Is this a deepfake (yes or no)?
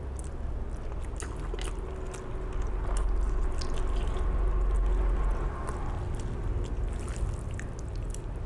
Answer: no